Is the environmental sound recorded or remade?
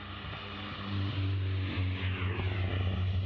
recorded